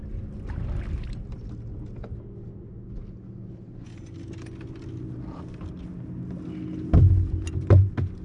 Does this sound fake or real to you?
real